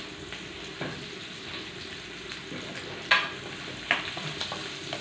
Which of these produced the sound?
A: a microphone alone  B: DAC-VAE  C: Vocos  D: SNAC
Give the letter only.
A